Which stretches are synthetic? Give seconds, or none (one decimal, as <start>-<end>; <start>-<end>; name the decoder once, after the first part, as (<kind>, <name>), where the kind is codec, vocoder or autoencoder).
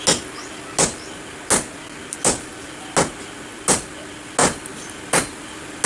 none